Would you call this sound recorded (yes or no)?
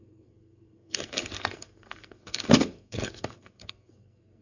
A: no